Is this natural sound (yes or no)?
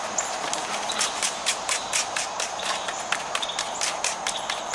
no